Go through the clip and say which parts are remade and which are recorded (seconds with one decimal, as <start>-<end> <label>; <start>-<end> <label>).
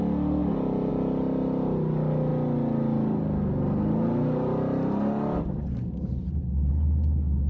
0.0-7.5 recorded